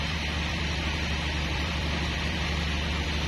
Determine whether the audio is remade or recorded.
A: remade